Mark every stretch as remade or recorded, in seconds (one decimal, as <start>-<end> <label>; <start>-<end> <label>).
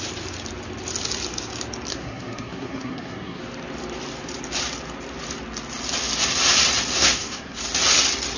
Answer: 0.0-1.9 recorded; 1.9-3.4 remade; 3.4-6.9 recorded; 6.9-7.6 remade; 7.6-8.4 recorded